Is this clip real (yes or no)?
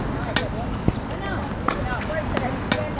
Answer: yes